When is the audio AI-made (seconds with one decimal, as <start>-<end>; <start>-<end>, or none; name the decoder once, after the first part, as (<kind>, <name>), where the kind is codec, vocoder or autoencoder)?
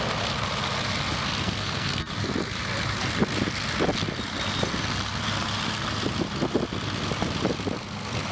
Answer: 1.4-2.0 (codec, SNAC)